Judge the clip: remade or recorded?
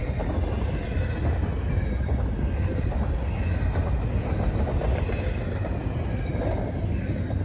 recorded